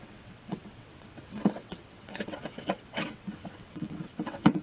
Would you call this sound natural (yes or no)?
no